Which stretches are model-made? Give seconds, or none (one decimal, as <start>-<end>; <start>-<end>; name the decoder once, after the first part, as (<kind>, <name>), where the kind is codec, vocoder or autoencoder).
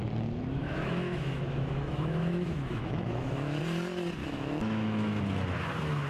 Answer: 0.6-3.6 (autoencoder, DAC-VAE); 4.2-5.2